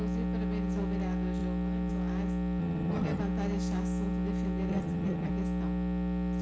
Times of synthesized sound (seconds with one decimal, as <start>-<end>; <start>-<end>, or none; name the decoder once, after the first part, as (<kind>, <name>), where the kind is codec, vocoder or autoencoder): 2.6-3.2 (vocoder, HiFi-GAN); 4.7-5.3